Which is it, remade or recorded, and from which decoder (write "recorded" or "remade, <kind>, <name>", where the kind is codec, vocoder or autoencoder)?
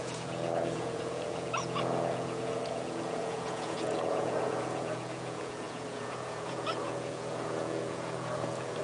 remade, vocoder, Vocos